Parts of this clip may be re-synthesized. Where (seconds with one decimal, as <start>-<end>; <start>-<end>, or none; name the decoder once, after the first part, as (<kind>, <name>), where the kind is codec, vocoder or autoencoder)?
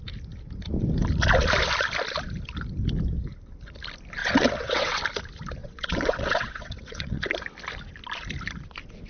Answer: 4.2-5.0 (vocoder, WaveNeXt); 5.6-7.2